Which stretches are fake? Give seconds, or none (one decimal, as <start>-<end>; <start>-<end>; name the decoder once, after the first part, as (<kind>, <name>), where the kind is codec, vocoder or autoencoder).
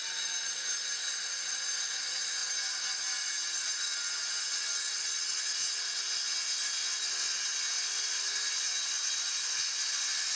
none